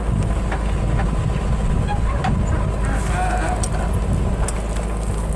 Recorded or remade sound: recorded